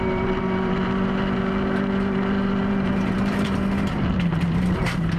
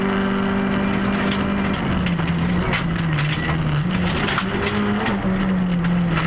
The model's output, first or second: first